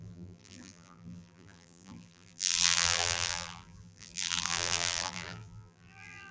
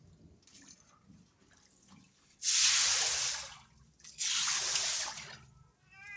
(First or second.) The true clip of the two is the second